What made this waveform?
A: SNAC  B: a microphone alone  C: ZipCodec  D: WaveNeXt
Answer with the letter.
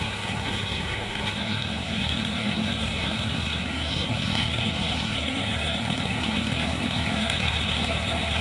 A